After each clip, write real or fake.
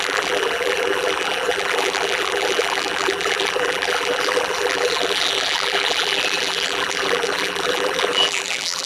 fake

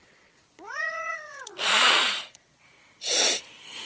fake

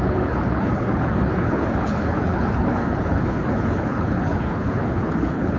fake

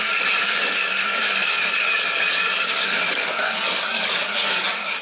fake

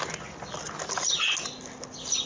real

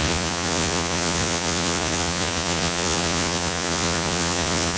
fake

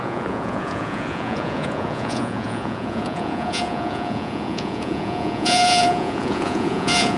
fake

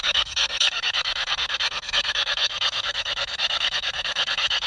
fake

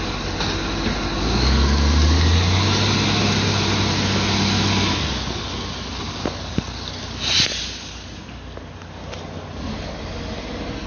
real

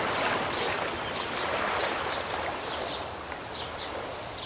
fake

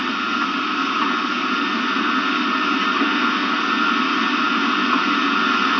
real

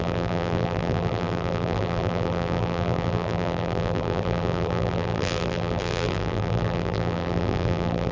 fake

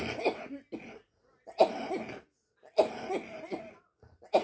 real